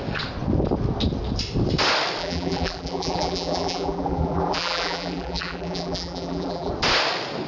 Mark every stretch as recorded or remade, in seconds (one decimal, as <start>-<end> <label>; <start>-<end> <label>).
0.0-2.2 recorded; 2.2-6.7 remade; 6.7-7.5 recorded